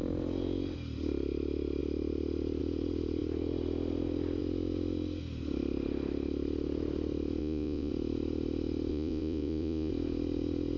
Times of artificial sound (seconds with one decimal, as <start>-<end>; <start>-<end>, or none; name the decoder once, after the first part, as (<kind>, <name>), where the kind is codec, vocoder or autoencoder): 7.4-7.9 (vocoder, Vocos); 8.9-9.9